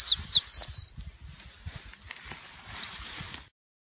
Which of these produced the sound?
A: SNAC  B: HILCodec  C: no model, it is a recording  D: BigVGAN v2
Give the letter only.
C